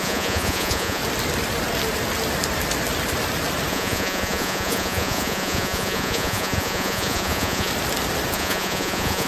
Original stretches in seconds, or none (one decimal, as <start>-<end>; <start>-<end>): 1.0-3.7; 7.7-8.3